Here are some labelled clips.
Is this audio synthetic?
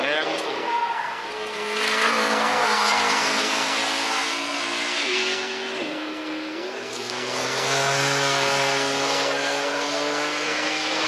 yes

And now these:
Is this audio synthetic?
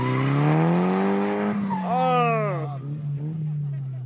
no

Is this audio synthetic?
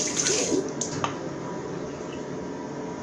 no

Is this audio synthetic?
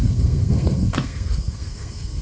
yes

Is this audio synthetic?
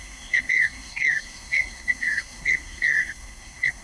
yes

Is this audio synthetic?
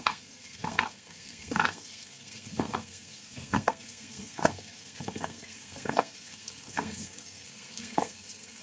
yes